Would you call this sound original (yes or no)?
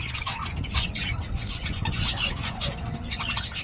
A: no